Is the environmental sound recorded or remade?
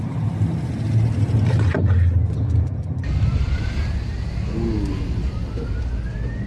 recorded